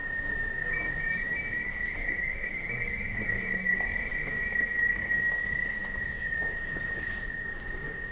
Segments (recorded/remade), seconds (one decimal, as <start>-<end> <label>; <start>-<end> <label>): 0.0-8.1 remade